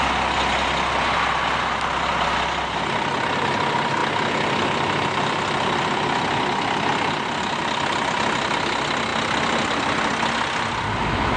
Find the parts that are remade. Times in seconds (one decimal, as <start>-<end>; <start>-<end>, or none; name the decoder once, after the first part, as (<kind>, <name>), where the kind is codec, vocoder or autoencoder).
none